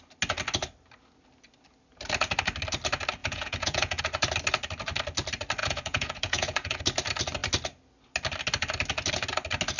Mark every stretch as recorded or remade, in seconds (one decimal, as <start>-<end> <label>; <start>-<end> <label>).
0.0-3.2 recorded; 3.2-4.0 remade; 4.0-5.6 recorded; 5.6-6.8 remade; 6.8-9.8 recorded